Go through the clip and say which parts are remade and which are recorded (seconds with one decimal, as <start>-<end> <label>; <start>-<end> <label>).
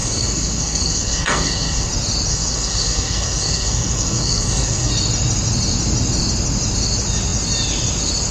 0.0-1.9 remade; 1.9-2.3 recorded; 2.3-4.9 remade; 4.9-8.3 recorded